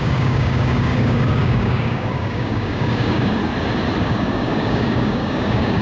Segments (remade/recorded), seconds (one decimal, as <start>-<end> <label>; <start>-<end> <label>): 0.0-3.4 remade; 3.4-4.0 recorded; 4.0-5.8 remade